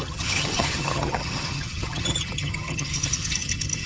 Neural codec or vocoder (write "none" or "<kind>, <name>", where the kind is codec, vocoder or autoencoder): vocoder, HiFi-GAN